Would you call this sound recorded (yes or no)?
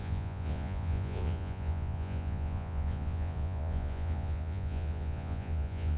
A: no